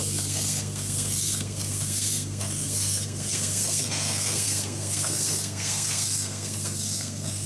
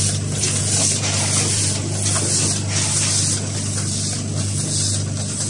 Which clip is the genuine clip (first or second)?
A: second